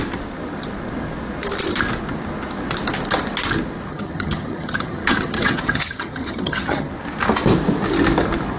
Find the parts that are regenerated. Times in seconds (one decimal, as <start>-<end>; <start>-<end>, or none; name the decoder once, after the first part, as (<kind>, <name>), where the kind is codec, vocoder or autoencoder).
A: 3.9-6.9 (vocoder, HiFi-GAN)